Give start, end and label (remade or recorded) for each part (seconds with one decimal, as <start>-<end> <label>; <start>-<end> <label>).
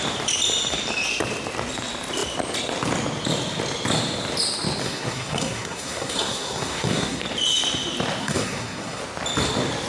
0.0-4.8 recorded; 4.8-7.2 remade; 7.2-8.2 recorded; 8.2-9.0 remade; 9.0-9.9 recorded